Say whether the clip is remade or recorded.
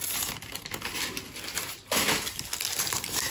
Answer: recorded